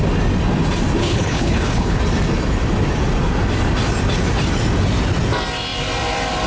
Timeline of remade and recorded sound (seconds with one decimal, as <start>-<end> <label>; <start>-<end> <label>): 0.0-1.0 recorded; 1.0-2.0 remade; 2.0-6.5 recorded